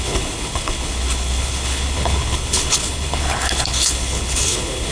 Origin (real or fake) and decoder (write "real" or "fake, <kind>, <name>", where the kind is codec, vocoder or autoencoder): fake, codec, HILCodec